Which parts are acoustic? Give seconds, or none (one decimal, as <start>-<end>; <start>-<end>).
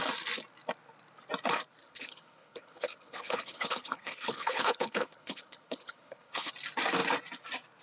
0.0-1.8; 6.5-7.8